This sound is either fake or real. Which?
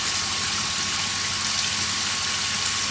real